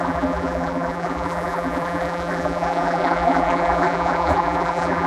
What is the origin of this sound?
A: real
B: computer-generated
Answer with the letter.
B